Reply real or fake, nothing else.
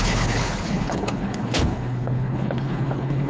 fake